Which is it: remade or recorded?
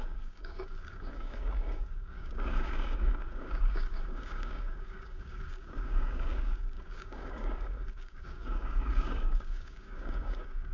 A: remade